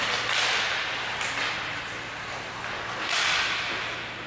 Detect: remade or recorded recorded